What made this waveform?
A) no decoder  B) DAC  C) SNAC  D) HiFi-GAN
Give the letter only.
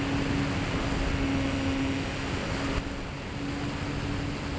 A